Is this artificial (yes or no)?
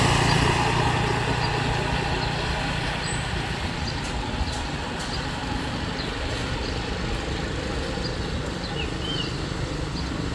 no